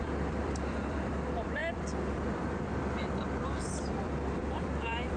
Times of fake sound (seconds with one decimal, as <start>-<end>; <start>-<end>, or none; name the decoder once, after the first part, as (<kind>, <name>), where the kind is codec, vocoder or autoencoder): 0.0-5.2 (vocoder, BigVGAN v2)